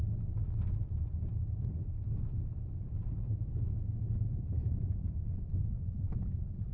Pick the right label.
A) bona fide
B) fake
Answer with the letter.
A